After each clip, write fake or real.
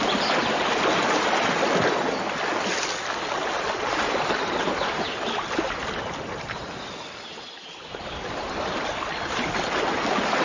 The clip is real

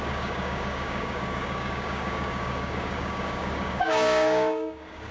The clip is fake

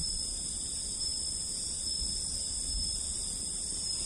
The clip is real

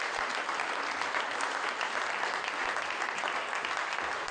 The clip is real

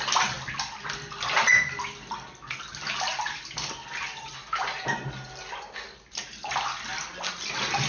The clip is real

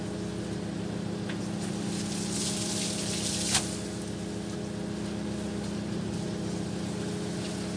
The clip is real